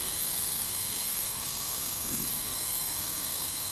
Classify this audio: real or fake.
fake